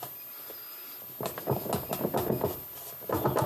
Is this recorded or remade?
recorded